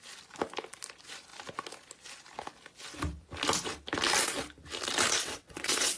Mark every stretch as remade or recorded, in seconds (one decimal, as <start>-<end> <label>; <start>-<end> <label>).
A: 0.0-5.2 recorded; 5.2-6.0 remade